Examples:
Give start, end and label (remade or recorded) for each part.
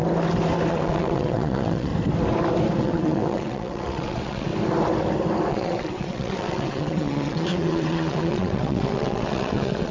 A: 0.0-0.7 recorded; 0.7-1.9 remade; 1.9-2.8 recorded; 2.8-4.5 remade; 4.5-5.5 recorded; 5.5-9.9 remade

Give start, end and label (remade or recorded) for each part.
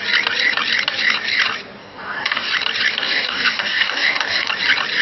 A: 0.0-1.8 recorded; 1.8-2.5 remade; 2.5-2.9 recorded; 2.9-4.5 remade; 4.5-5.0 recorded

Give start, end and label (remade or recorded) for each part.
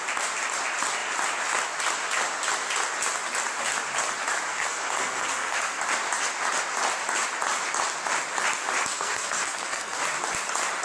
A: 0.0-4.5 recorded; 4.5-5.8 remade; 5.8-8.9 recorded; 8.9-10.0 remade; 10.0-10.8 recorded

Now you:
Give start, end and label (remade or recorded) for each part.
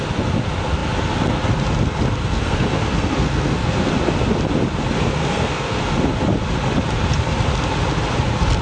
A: 0.0-2.2 recorded; 2.2-3.9 remade; 3.9-5.2 recorded; 5.2-5.8 remade; 5.8-8.6 recorded